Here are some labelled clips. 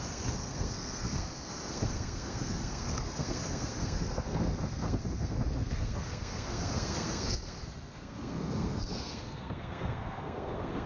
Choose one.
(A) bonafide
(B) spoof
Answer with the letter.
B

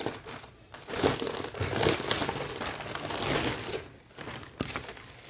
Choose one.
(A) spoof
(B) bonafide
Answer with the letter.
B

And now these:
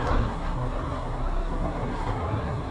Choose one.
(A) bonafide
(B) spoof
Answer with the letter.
B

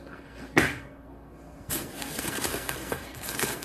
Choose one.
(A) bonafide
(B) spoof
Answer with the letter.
B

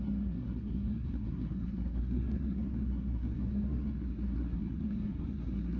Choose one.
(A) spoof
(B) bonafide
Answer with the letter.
A